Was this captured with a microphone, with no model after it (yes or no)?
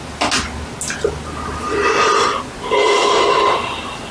yes